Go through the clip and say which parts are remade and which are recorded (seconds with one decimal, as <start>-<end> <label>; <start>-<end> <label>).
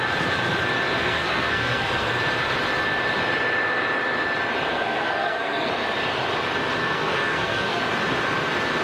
0.0-1.0 recorded; 1.0-2.1 remade; 2.1-4.7 recorded; 4.7-5.7 remade; 5.7-6.8 recorded; 6.8-7.8 remade; 7.8-8.8 recorded